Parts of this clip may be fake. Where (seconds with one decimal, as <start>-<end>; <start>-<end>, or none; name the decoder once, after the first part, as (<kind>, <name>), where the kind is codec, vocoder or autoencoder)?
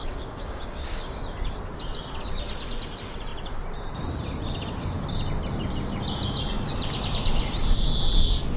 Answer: 0.0-1.2 (codec, DAC)